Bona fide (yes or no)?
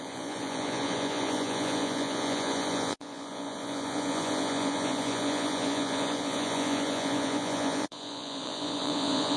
no